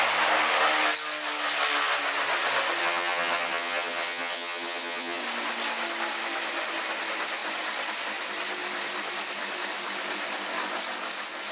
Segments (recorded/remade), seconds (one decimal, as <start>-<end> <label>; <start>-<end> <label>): 0.0-2.8 recorded; 2.8-5.2 remade; 5.2-11.5 recorded